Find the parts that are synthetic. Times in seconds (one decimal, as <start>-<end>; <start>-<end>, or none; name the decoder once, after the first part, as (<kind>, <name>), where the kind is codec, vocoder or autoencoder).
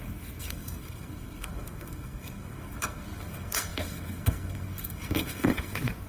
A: 0.0-6.1 (codec, SNAC)